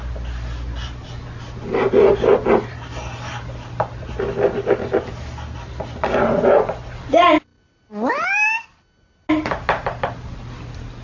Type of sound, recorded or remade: recorded